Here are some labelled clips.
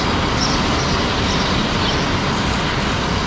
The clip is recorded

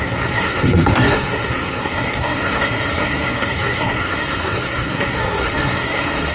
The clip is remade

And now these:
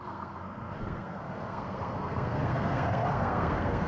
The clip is remade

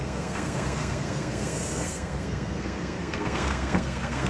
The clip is remade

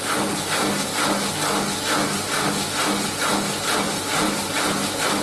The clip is recorded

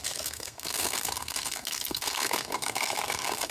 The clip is remade